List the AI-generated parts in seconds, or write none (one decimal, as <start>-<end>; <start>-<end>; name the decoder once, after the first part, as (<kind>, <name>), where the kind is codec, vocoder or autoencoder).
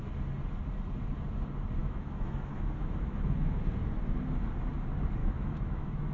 1.8-3.6 (autoencoder, DAC-VAE); 5.2-6.1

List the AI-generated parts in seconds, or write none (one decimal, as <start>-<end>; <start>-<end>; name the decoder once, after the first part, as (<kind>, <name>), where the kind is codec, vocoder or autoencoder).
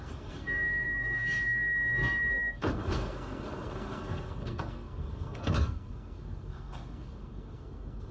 0.0-8.1 (codec, SNAC)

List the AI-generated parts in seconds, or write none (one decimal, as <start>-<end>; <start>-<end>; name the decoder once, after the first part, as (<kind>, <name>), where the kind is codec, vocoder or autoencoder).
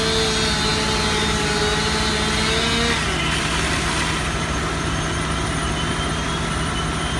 none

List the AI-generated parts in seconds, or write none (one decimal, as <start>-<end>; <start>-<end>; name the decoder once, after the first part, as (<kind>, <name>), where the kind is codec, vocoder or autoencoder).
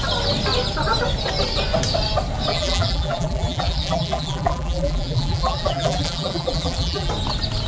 2.5-7.1 (vocoder, BigVGAN v2)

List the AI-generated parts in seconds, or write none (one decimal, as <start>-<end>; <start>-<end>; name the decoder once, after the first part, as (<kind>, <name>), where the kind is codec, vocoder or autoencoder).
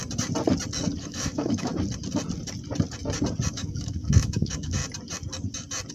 1.0-1.7 (autoencoder, DAC-VAE); 3.5-4.8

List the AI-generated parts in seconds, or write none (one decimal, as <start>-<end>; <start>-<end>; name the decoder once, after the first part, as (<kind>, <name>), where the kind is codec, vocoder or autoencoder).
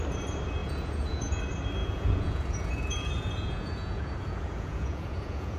0.6-1.4 (vocoder, Vocos); 1.8-5.6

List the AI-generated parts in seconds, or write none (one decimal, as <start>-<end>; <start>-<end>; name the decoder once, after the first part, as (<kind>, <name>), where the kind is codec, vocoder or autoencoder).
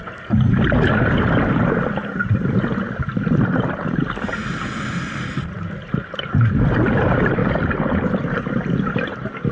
none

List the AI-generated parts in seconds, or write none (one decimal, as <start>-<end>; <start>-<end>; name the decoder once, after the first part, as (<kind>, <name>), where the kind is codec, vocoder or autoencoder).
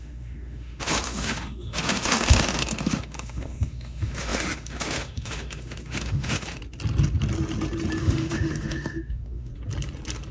0.0-6.6 (autoencoder, DAC-VAE); 8.0-9.5